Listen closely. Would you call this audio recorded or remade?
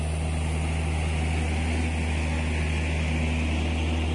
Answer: recorded